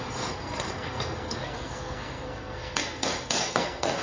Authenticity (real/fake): fake